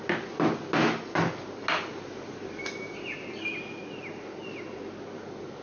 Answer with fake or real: real